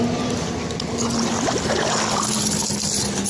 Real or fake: real